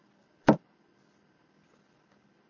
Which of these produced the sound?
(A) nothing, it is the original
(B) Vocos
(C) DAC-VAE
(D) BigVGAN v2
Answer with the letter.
A